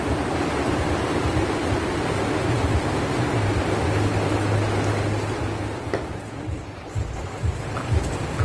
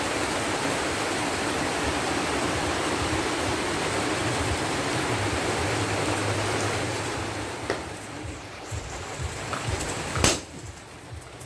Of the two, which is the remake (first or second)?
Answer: second